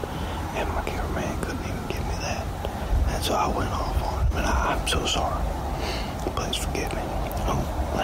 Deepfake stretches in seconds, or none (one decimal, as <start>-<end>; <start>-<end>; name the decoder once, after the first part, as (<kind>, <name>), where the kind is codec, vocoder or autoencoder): 0.0-0.8 (vocoder, BigVGAN v2)